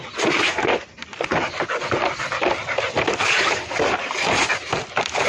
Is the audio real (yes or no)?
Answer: yes